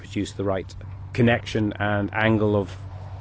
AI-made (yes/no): no